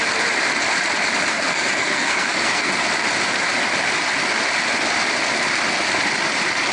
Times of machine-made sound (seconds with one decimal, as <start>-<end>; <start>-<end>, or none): 1.3-2.7